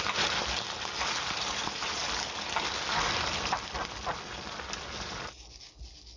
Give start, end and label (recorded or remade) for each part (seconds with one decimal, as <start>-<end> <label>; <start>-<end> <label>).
0.0-6.2 recorded